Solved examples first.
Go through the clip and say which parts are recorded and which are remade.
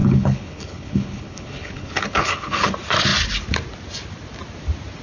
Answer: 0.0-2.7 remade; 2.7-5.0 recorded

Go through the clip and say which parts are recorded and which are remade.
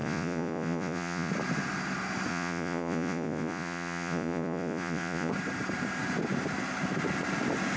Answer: 0.0-1.3 remade; 1.3-2.3 recorded; 2.3-5.3 remade; 5.3-7.8 recorded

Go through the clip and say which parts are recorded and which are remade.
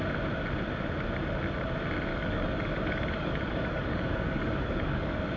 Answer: 0.0-2.1 recorded; 2.1-5.4 remade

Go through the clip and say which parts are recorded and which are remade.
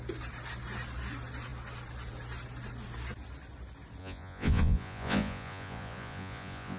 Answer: 0.0-4.0 recorded; 4.0-6.8 remade